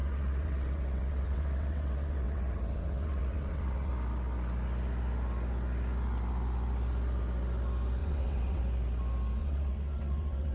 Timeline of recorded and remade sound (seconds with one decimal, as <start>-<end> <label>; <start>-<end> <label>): 0.0-3.9 remade; 3.9-8.0 recorded; 8.0-8.6 remade; 8.6-9.4 recorded; 9.4-10.5 remade